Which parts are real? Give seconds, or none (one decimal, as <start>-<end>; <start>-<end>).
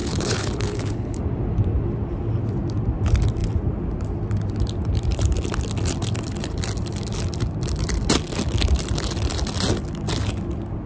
1.2-10.9